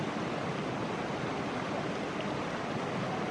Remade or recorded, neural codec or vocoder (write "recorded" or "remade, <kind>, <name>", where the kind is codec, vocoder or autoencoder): recorded